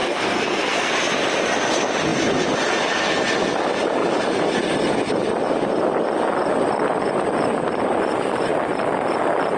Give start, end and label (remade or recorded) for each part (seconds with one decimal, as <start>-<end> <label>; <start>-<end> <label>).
0.0-0.9 remade; 0.9-9.6 recorded